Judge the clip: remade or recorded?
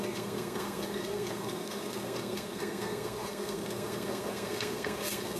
remade